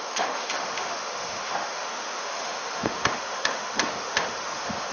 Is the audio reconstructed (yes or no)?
yes